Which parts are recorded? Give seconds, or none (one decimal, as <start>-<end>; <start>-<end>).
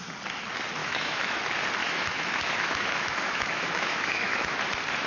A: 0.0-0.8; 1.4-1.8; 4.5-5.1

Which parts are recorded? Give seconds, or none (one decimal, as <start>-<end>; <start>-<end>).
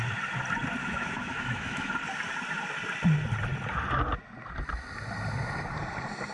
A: 0.0-0.8; 1.9-6.3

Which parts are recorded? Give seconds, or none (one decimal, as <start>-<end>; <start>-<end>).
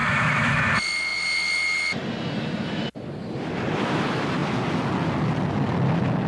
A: 0.6-6.3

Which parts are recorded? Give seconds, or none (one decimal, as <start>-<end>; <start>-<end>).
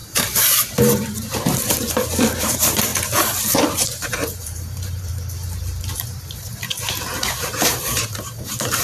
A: 2.9-3.6; 5.1-6.3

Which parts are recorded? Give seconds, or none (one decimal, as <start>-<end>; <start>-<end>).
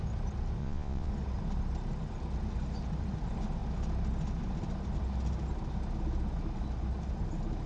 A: 0.0-0.6; 1.1-7.7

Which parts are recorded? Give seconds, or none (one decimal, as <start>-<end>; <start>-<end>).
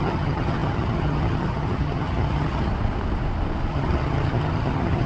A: 2.7-3.7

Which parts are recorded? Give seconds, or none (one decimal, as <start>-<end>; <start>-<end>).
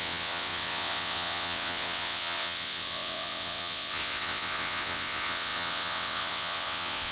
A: none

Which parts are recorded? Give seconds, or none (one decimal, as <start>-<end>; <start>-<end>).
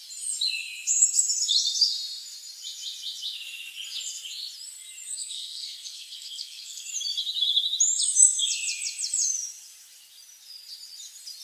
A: 0.0-5.1; 6.9-11.4